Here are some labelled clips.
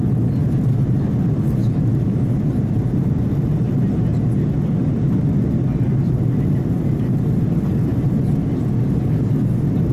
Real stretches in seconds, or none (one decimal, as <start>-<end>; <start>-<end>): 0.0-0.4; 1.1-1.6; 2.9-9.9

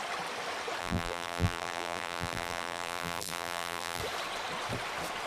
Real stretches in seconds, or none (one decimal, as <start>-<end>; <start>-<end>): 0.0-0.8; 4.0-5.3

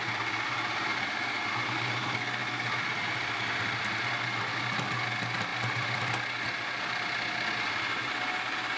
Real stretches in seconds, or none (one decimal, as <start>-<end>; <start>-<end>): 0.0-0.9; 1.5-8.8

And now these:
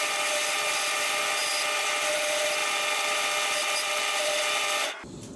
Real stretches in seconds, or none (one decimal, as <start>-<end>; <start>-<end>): 0.0-5.4

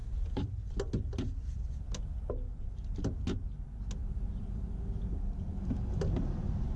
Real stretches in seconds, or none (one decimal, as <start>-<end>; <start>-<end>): 0.7-4.0; 4.8-5.5; 6.0-6.8

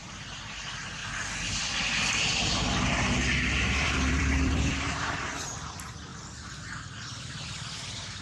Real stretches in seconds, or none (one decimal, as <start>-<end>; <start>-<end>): 1.0-1.6; 6.1-7.2

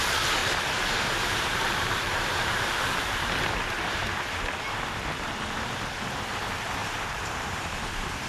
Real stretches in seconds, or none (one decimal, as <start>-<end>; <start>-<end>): 0.0-0.4; 2.8-6.8; 7.7-8.3

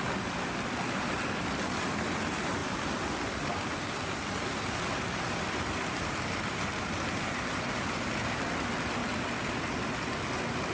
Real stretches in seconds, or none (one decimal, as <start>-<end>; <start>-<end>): 9.0-9.6